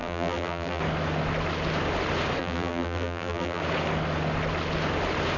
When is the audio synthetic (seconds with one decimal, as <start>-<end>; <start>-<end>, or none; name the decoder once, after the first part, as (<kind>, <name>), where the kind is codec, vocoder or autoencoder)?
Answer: 0.0-0.8 (vocoder, BigVGAN v2); 2.4-3.6